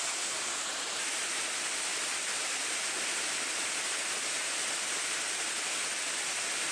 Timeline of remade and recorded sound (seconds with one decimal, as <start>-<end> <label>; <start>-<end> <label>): 0.0-1.9 recorded; 1.9-5.9 remade; 5.9-6.7 recorded